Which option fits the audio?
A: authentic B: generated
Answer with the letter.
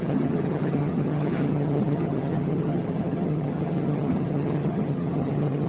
B